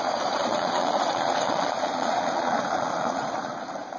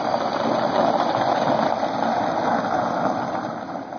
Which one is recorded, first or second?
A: second